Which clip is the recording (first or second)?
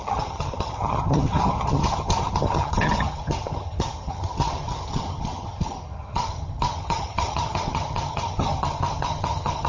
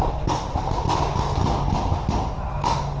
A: second